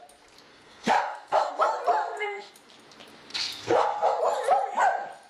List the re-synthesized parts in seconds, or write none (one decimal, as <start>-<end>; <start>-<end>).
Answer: 0.5-1.5; 2.0-2.5; 3.3-4.2